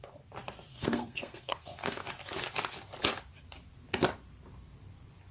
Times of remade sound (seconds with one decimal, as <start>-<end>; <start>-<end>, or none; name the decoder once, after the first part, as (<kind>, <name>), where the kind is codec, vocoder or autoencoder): 0.7-2.1 (codec, SNAC)